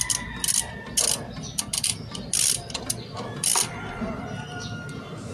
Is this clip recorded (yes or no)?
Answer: yes